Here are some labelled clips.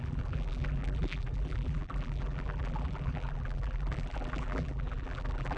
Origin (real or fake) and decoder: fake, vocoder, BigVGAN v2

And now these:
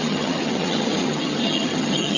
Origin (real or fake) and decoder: fake, vocoder, HiFi-GAN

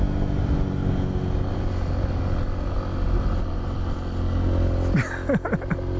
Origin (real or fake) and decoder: real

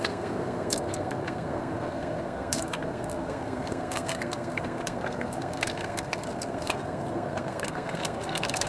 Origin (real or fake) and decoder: fake, codec, SNAC